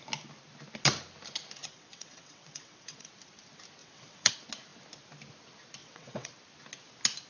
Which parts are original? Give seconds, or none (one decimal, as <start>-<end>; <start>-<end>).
0.0-1.6; 3.1-3.8; 4.3-5.8; 6.3-7.3